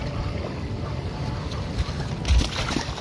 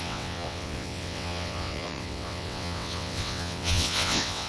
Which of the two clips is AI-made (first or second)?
second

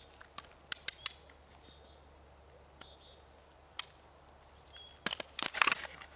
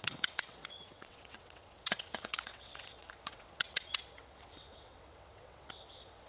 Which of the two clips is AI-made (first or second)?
second